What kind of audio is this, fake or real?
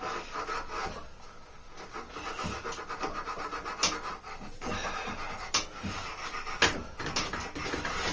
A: real